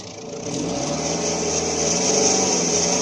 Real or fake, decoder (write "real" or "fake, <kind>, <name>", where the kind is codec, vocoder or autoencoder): real